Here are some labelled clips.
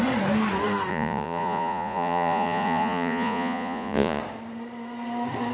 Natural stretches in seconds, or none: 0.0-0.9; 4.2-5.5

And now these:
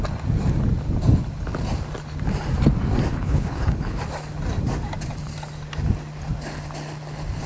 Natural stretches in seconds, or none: 0.0-3.1; 4.0-7.5

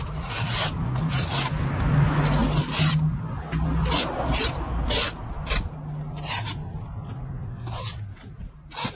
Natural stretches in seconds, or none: 0.0-8.9

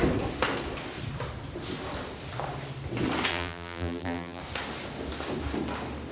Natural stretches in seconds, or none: 0.0-3.3; 4.4-6.1